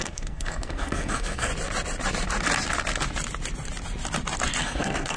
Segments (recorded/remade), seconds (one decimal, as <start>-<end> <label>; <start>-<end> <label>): 0.0-1.5 remade; 1.5-4.6 recorded; 4.6-5.2 remade